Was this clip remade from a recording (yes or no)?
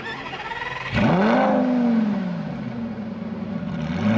no